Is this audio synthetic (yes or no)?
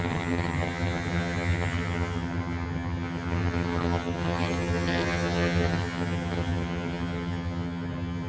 yes